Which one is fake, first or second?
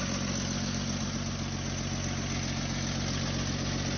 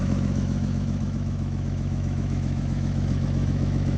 second